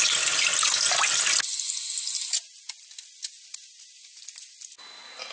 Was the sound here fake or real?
real